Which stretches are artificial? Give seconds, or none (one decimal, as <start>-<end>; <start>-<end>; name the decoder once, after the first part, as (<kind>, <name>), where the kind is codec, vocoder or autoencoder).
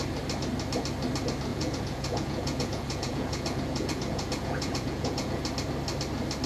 1.5-5.4 (vocoder, Vocos)